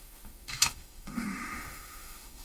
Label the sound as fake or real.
fake